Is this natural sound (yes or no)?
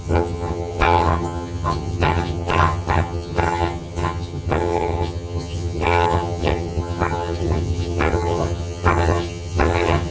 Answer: no